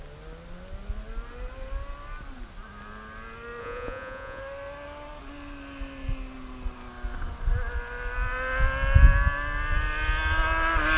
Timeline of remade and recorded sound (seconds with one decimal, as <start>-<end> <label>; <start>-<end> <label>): 0.0-3.6 recorded; 3.6-4.4 remade; 4.4-11.0 recorded